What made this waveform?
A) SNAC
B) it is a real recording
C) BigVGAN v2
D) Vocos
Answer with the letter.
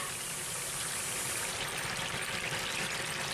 B